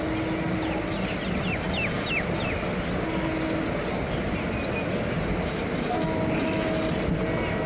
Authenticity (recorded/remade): recorded